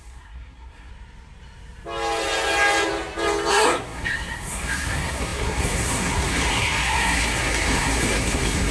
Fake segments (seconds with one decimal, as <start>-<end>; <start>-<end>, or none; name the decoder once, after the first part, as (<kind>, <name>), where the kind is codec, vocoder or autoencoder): 0.0-0.9 (codec, SNAC); 3.5-8.7